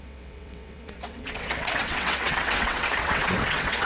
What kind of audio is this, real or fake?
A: fake